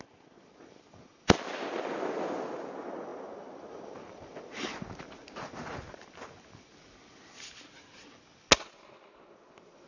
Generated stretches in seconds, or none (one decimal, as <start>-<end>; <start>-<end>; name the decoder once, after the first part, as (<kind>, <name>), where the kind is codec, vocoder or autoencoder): none